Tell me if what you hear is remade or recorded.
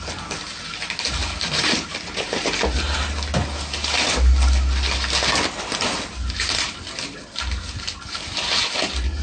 recorded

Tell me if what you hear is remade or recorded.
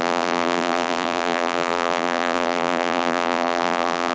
remade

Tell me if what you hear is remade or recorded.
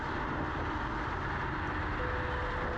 recorded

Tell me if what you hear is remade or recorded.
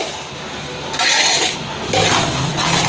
recorded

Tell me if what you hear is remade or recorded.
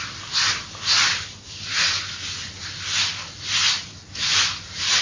recorded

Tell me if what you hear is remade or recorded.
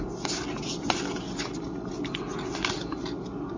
recorded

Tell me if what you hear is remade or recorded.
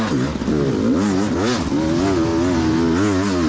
recorded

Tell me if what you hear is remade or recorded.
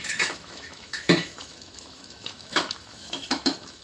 remade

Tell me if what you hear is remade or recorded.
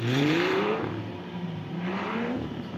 remade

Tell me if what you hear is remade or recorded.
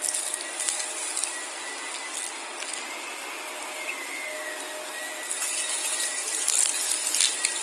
recorded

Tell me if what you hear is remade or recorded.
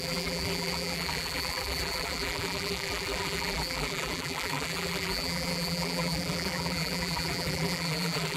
remade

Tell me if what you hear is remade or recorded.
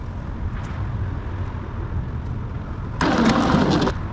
recorded